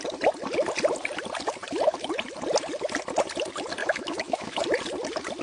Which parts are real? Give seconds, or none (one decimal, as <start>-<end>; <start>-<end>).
0.0-3.8; 4.6-5.4